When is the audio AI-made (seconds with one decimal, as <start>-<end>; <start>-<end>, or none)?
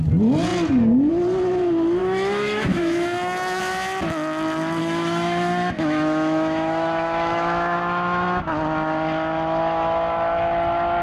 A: 2.0-3.6; 4.8-8.4